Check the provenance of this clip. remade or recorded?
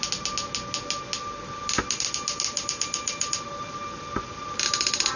recorded